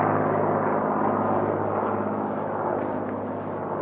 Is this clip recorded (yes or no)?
yes